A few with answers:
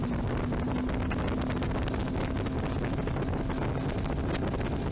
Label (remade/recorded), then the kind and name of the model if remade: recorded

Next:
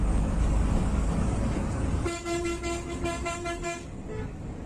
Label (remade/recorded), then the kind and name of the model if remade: remade, codec, DAC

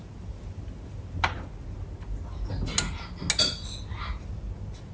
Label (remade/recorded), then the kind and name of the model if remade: recorded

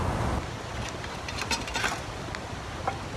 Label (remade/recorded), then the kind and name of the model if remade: recorded